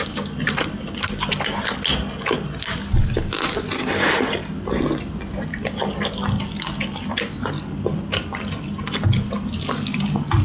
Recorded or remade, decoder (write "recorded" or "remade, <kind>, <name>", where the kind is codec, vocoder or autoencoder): recorded